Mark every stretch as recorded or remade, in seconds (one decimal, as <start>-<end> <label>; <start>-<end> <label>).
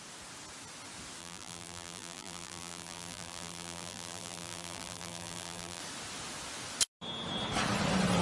0.0-1.2 recorded; 1.2-5.8 remade; 5.8-8.2 recorded